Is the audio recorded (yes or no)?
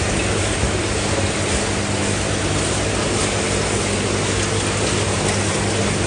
yes